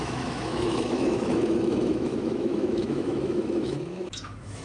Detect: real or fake fake